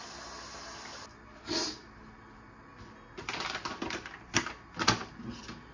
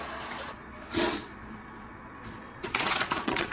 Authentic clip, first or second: first